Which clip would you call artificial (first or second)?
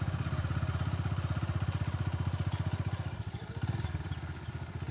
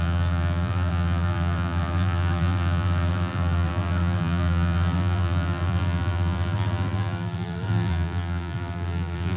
second